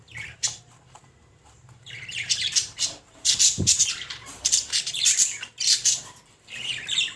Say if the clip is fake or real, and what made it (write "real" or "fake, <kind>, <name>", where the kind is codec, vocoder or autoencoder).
fake, vocoder, BigVGAN v2